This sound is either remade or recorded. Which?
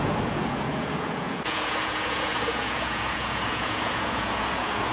remade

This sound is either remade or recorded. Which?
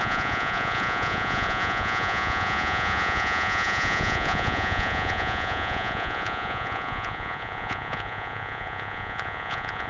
remade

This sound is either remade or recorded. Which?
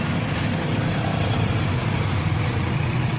recorded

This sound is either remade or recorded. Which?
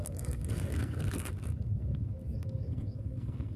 remade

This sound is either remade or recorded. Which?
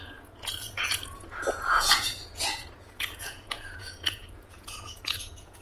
remade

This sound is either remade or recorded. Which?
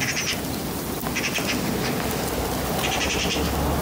recorded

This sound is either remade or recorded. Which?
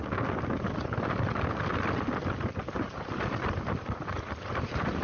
recorded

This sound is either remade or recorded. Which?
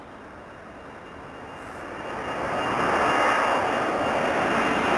recorded